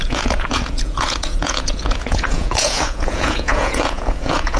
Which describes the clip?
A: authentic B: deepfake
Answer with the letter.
B